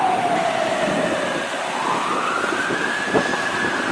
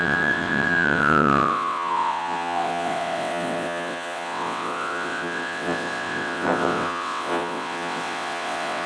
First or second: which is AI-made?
second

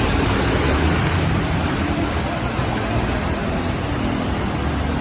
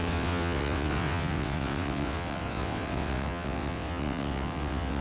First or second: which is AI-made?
second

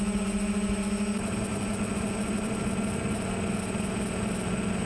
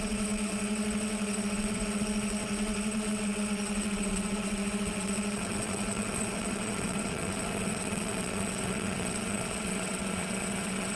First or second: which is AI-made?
second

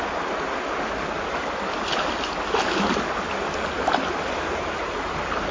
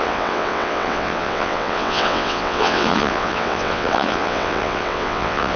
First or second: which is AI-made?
second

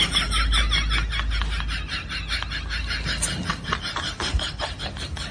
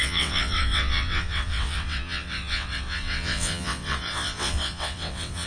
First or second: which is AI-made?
second